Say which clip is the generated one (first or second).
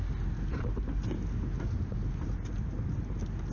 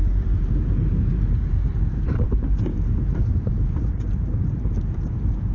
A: second